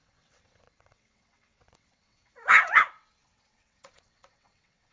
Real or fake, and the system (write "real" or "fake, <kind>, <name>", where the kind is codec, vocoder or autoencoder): fake, vocoder, WaveNeXt